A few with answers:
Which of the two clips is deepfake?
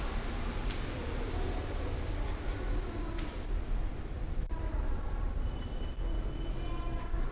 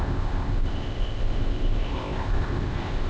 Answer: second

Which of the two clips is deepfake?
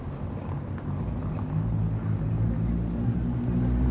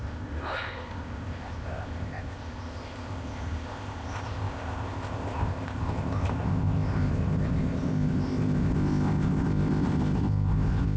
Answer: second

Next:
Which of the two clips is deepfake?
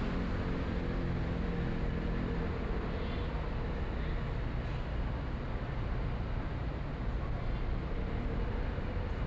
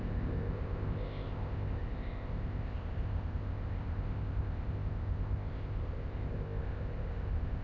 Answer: second